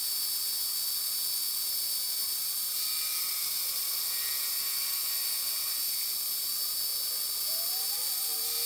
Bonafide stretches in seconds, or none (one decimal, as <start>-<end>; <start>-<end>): 0.0-3.1; 3.9-8.7